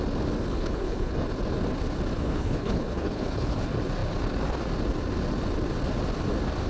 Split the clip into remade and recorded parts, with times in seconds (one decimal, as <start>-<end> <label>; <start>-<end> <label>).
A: 0.0-0.5 recorded; 0.5-1.1 remade; 1.1-2.1 recorded; 2.1-3.6 remade; 3.6-6.7 recorded